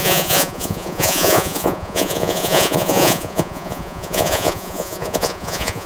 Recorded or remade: remade